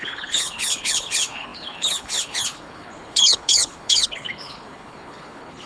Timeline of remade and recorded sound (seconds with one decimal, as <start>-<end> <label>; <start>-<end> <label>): 0.0-5.7 remade